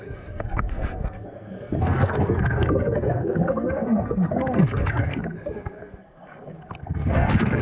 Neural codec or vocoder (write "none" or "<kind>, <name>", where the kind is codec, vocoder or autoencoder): codec, SNAC